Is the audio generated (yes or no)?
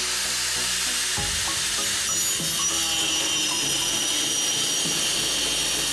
no